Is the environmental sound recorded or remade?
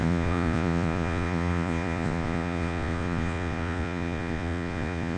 remade